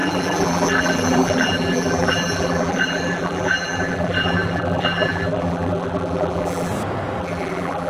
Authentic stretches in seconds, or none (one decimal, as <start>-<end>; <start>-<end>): 6.7-7.2